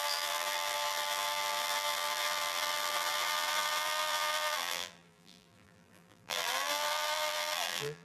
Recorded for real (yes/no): no